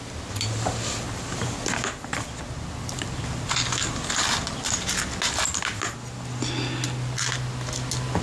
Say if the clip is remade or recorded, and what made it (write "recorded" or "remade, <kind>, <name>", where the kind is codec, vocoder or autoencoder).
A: recorded